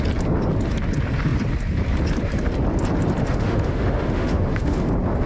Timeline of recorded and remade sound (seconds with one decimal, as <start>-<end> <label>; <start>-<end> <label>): 0.0-3.2 recorded; 3.2-4.8 remade; 4.8-5.3 recorded